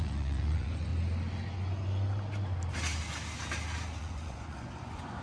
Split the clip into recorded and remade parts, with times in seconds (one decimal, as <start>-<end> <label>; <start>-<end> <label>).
0.0-0.9 remade; 0.9-4.0 recorded; 4.0-5.2 remade